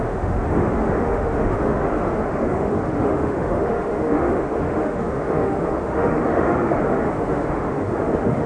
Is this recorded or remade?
remade